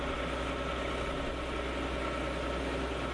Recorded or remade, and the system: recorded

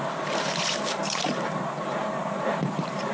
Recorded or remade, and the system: remade, vocoder, BigVGAN v2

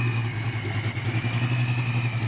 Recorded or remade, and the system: recorded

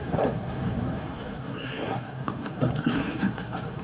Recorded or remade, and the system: remade, codec, SNAC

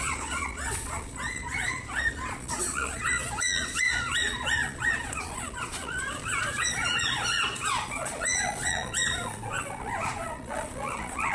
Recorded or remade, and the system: remade, vocoder, Vocos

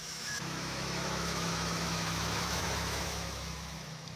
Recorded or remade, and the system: remade, autoencoder, DAC-VAE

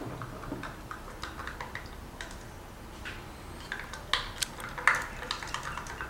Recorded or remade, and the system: recorded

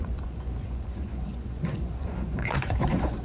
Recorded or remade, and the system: remade, vocoder, Vocos